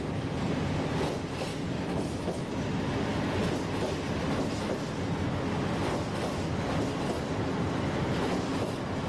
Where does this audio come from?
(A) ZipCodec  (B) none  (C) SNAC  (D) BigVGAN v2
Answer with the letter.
B